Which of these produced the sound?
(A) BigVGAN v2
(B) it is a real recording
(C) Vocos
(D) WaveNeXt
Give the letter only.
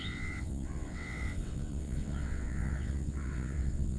D